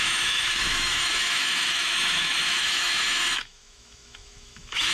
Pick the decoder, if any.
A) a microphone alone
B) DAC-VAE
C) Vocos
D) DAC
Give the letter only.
B